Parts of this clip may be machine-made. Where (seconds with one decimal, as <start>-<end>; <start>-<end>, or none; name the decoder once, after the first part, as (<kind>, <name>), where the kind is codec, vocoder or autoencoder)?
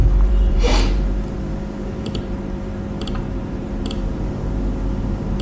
0.0-5.4 (vocoder, BigVGAN v2)